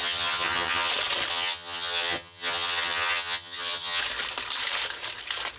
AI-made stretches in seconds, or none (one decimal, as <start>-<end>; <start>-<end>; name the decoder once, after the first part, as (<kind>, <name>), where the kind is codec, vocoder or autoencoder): 0.0-0.9 (vocoder, HiFi-GAN); 1.3-4.0